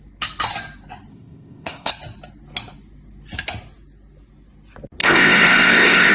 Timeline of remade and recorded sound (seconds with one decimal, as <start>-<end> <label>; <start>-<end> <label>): 0.0-1.1 recorded; 1.1-1.9 remade; 1.9-5.0 recorded; 5.0-6.1 remade